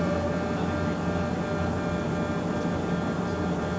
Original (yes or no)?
yes